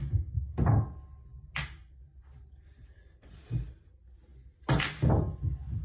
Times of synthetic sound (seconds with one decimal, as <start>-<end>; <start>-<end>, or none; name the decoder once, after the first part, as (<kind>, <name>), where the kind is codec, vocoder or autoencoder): none